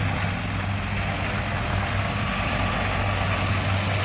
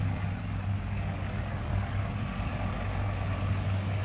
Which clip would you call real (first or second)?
first